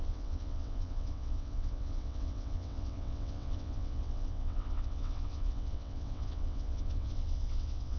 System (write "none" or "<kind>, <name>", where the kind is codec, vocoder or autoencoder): vocoder, WaveNeXt